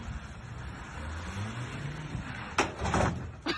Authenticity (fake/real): real